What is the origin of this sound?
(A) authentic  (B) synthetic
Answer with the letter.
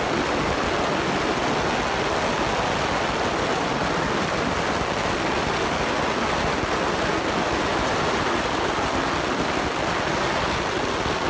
A